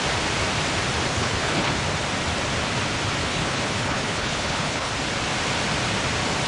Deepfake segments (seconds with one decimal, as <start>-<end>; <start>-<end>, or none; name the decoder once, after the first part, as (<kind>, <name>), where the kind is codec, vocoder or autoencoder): 1.1-1.7 (codec, HILCodec); 3.2-4.9